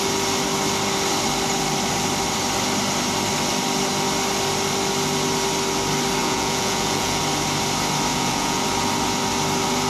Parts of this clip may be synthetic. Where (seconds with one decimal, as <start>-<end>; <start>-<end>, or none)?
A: 6.2-7.2; 8.1-8.6